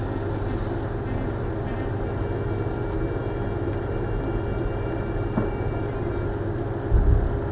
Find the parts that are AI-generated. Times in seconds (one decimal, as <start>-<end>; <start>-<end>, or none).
none